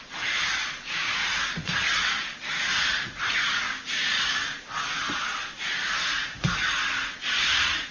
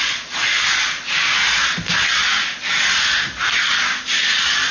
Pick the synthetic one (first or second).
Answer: first